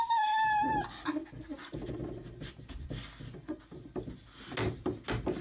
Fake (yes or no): no